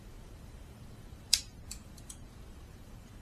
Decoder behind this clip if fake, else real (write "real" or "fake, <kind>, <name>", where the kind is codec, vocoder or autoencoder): fake, vocoder, BigVGAN v2